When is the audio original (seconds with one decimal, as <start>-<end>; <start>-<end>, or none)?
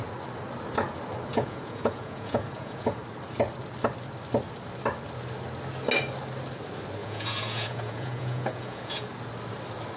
0.0-1.3; 3.0-7.0; 9.1-10.0